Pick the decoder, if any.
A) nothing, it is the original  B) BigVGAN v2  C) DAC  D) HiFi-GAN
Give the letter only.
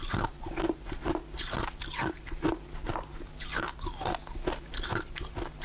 A